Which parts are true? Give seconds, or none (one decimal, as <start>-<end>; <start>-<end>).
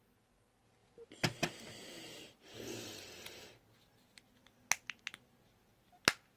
0.0-6.4